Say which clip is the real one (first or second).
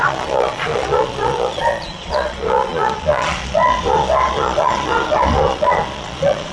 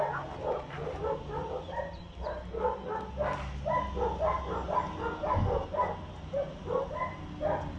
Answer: second